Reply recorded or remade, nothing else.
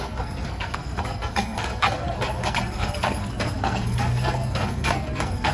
remade